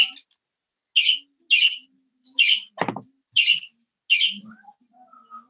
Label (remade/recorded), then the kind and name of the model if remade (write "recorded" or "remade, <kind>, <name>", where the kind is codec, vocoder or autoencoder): recorded